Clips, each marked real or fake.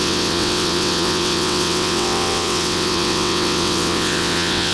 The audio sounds fake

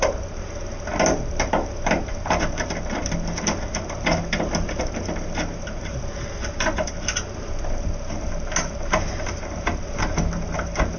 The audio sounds fake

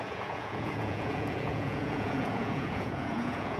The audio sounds fake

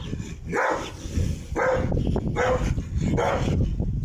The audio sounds real